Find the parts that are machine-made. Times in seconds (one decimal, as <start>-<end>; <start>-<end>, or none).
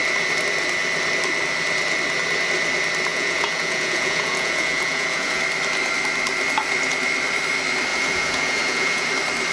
3.1-5.4; 7.9-9.1